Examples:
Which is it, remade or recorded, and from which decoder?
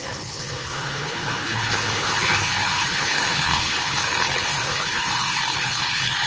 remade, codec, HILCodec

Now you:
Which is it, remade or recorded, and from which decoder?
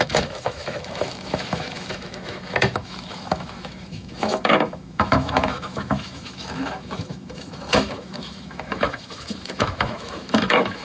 remade, autoencoder, DAC-VAE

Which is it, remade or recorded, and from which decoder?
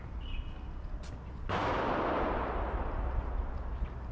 recorded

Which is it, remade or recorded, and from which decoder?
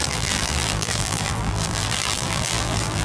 remade, vocoder, BigVGAN v2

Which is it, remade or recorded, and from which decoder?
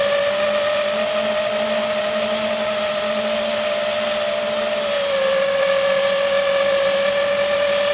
recorded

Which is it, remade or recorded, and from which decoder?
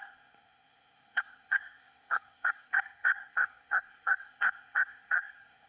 remade, codec, SNAC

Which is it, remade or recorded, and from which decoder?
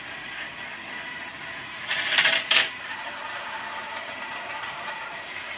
remade, vocoder, BigVGAN v2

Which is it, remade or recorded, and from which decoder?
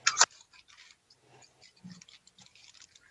recorded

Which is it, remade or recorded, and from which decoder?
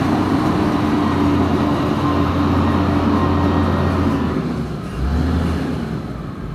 recorded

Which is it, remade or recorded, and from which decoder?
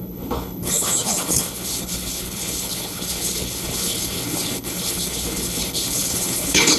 remade, codec, HILCodec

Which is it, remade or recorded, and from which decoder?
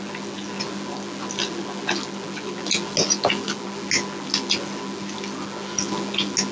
recorded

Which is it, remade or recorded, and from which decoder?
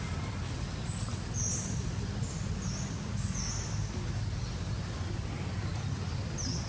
recorded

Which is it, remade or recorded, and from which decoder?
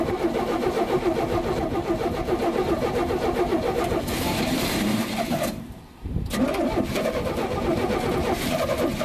remade, vocoder, BigVGAN v2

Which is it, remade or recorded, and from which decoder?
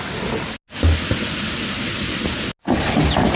recorded